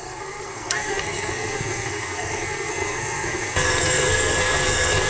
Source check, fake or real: fake